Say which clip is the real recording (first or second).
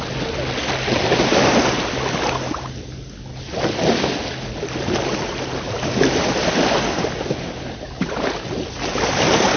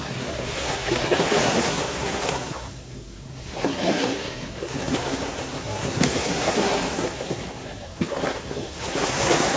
first